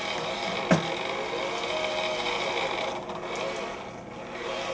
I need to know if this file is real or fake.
real